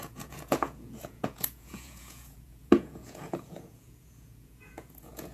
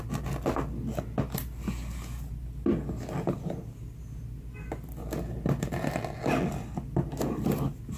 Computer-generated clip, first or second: first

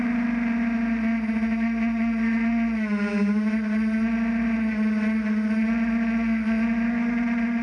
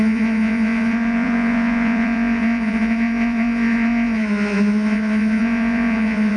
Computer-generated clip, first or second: second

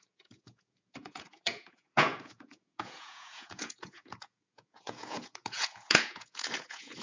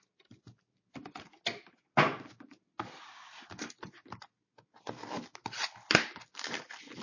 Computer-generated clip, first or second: first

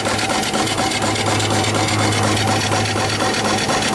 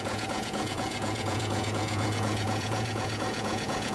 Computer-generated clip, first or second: second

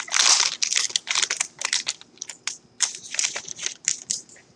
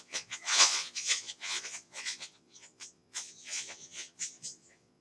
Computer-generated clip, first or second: second